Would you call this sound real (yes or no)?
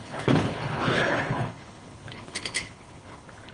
no